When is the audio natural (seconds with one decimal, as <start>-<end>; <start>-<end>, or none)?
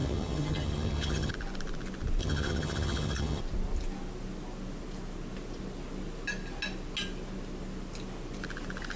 1.3-2.2; 3.4-9.0